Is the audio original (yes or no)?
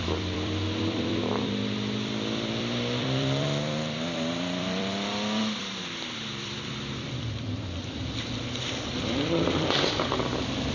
no